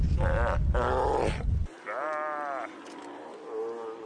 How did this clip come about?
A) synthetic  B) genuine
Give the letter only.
B